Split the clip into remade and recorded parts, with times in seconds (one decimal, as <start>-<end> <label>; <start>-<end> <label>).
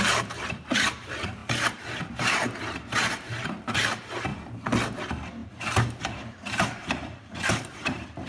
0.0-4.3 remade; 4.3-5.0 recorded; 5.0-8.3 remade